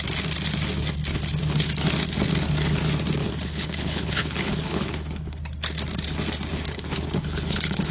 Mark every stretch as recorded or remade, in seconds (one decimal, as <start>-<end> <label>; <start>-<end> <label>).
0.0-1.1 recorded; 1.1-1.7 remade; 1.7-3.2 recorded; 3.2-5.4 remade; 5.4-6.5 recorded; 6.5-7.9 remade

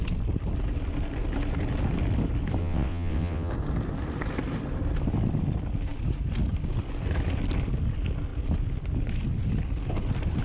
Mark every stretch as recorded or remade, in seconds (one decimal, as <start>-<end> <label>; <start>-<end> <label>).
0.0-2.6 recorded; 2.6-3.5 remade; 3.5-10.4 recorded

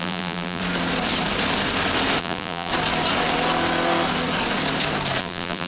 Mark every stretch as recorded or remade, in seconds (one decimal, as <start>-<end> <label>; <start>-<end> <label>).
0.0-0.6 remade; 0.6-2.2 recorded; 2.2-2.7 remade; 2.7-5.2 recorded; 5.2-5.7 remade

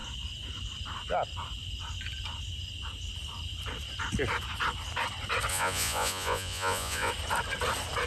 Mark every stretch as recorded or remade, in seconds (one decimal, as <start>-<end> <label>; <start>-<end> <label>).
0.0-5.5 recorded; 5.5-7.1 remade; 7.1-8.1 recorded

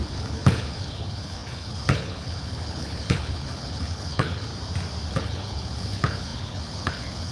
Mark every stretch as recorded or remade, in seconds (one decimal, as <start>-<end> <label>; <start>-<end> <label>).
0.0-4.5 remade; 4.5-5.1 recorded; 5.1-7.3 remade

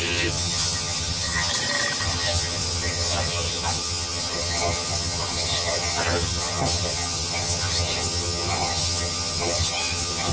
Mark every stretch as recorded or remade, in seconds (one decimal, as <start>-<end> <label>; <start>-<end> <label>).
0.0-1.5 remade; 1.5-2.0 recorded; 2.0-10.3 remade